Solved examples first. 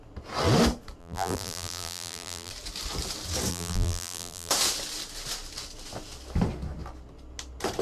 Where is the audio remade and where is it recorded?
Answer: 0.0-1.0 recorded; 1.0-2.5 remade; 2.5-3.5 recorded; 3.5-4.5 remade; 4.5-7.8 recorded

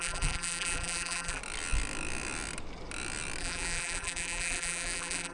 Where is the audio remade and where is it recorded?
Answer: 0.0-1.4 remade; 1.4-3.4 recorded; 3.4-5.3 remade

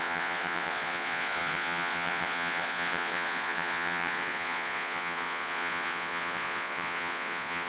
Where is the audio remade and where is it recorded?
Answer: 0.0-7.7 remade